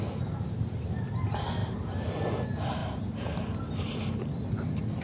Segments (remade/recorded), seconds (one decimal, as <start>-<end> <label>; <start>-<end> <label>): 0.0-5.0 recorded